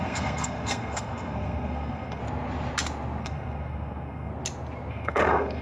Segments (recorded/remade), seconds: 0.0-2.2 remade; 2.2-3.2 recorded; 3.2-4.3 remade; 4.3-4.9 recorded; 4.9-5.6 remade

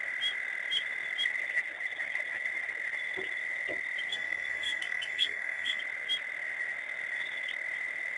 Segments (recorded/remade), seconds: 0.0-4.1 recorded; 4.1-5.8 remade; 5.8-8.2 recorded